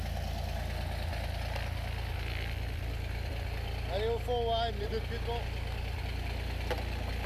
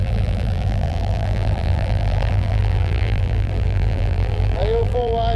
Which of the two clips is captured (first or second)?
first